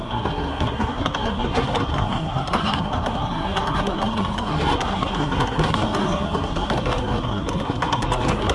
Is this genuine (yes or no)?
no